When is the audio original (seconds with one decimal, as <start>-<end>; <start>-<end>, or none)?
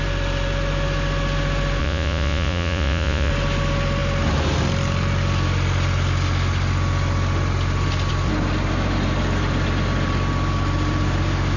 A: 0.0-1.8; 3.3-11.6